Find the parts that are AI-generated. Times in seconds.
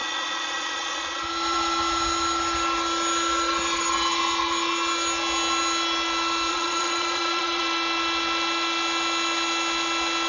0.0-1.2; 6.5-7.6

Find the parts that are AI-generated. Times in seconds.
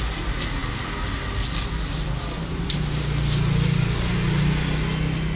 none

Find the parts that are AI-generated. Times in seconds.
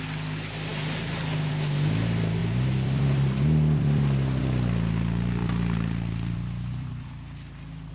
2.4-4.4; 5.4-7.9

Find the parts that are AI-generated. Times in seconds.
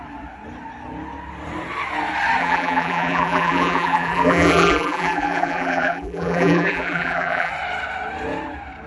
2.4-7.5